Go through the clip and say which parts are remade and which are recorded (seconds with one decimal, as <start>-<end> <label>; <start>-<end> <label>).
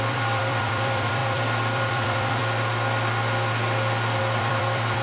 0.0-2.4 remade; 2.4-4.2 recorded; 4.2-5.0 remade